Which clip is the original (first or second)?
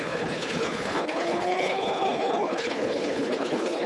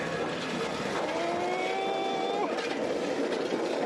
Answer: second